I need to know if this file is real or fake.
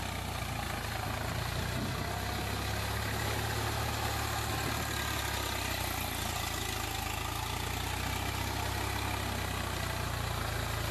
real